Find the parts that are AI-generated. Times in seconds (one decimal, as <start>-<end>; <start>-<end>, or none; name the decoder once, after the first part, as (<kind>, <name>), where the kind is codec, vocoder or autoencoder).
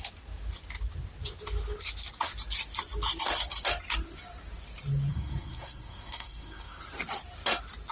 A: 5.1-6.8 (codec, SNAC)